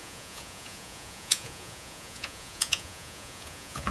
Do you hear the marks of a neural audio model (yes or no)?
yes